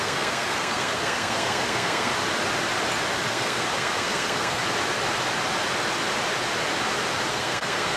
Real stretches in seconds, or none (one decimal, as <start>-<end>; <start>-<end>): 2.1-3.3; 4.6-7.3